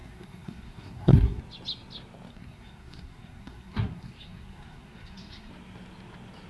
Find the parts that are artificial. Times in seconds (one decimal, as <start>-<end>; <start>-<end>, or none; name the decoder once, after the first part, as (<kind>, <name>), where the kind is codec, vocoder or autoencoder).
0.0-1.4 (codec, SNAC); 2.3-5.5